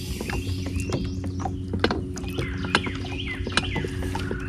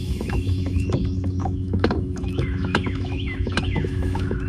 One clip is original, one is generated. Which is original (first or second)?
first